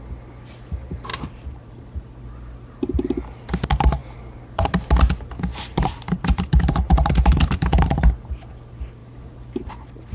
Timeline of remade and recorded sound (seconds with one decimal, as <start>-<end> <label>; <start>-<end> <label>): 0.0-1.1 recorded; 1.1-2.2 remade; 2.2-5.5 recorded; 5.5-8.1 remade; 8.1-9.0 recorded; 9.0-9.7 remade; 9.7-10.1 recorded